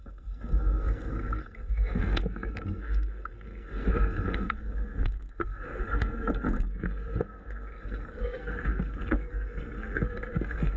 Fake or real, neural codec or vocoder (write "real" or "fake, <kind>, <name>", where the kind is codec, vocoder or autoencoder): fake, codec, SNAC